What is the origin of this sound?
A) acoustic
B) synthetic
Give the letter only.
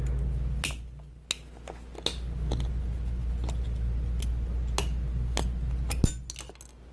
A